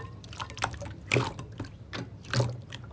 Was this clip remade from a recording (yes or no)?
no